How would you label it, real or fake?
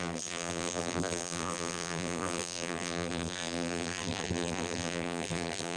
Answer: fake